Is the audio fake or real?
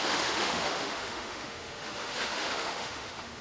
fake